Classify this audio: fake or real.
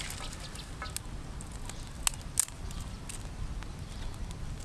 real